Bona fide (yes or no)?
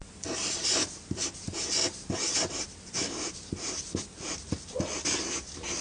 yes